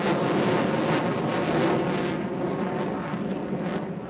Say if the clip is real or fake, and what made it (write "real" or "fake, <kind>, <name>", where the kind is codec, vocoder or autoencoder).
real